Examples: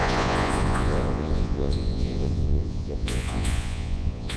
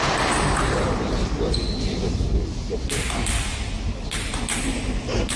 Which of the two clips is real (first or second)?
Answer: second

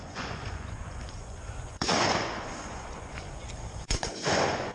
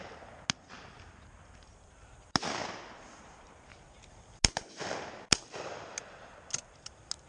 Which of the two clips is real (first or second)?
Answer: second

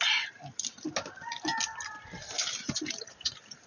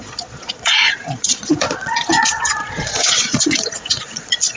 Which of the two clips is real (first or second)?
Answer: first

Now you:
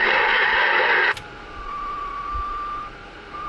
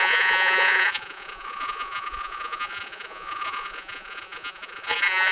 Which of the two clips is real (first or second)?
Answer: first